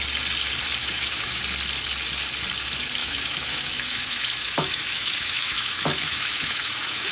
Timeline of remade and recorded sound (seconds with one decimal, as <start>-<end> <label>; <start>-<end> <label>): 0.0-0.8 recorded; 0.8-1.4 remade; 1.4-3.0 recorded; 3.0-7.1 remade